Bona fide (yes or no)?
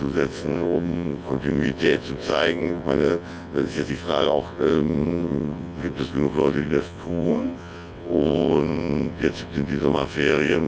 no